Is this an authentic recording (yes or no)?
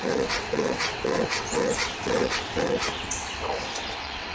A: no